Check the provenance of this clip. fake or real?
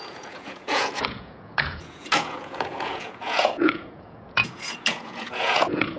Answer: fake